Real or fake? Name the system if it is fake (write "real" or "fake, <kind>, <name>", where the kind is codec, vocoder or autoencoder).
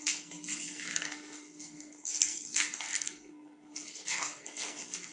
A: fake, codec, SNAC